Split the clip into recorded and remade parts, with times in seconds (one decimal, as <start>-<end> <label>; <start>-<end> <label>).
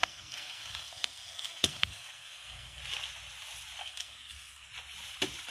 0.0-2.8 remade; 2.8-3.8 recorded; 3.8-4.7 remade; 4.7-5.5 recorded